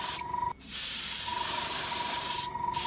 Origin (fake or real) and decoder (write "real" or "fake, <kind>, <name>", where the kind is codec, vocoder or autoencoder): fake, vocoder, BigVGAN v2